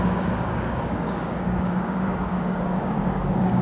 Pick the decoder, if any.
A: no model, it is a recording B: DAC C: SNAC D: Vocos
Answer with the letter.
B